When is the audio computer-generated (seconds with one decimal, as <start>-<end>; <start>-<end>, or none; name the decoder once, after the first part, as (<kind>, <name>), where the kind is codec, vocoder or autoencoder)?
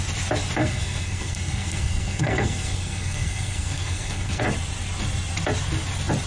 0.6-4.4 (codec, SNAC)